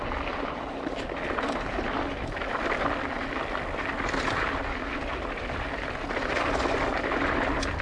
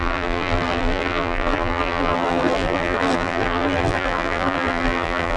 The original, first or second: first